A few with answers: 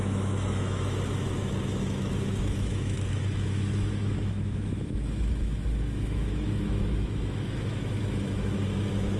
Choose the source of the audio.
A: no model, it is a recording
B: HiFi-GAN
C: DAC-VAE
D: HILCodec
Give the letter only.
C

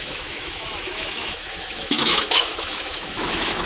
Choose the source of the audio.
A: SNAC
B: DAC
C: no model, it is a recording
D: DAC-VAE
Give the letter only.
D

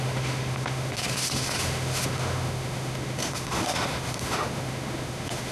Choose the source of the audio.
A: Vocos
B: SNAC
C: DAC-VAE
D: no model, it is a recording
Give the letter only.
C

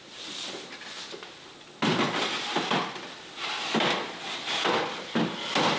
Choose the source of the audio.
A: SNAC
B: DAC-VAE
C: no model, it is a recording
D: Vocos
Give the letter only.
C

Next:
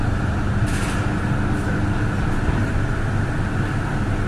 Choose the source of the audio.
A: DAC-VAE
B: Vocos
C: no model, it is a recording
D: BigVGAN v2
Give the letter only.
C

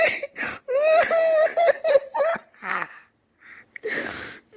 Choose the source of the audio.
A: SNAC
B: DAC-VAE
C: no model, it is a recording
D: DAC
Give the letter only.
C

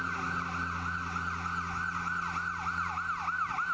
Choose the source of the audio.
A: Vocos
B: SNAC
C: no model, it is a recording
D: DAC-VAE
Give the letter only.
C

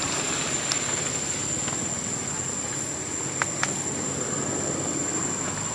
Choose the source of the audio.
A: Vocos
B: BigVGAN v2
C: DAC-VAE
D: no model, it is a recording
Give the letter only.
D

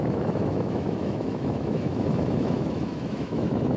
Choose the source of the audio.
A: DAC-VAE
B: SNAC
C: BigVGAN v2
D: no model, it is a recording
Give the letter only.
A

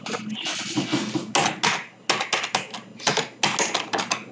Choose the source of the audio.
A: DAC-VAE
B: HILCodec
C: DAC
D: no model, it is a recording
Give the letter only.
D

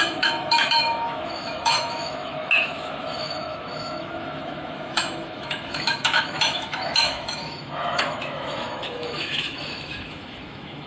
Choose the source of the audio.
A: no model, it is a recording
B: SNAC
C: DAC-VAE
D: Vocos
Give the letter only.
C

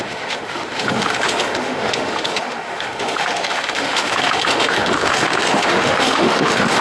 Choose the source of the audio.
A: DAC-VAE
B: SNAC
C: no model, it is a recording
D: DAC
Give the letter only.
A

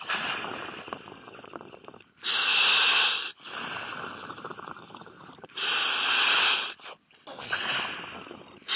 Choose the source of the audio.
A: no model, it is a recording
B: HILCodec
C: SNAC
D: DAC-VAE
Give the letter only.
A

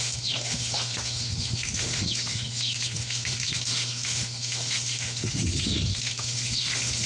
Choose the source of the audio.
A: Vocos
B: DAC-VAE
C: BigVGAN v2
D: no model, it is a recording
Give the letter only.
B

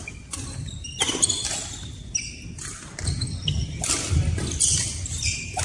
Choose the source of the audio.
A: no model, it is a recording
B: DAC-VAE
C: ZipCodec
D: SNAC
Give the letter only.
A